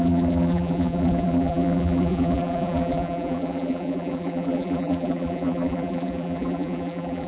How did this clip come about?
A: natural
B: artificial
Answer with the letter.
B